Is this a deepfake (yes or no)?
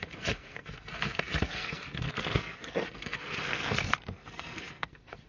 yes